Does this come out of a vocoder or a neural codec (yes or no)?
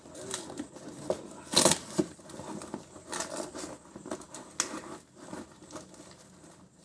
no